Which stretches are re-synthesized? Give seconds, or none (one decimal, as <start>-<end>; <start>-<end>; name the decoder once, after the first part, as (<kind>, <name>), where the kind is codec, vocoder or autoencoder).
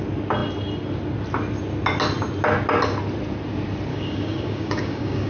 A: 3.9-5.3 (codec, DAC)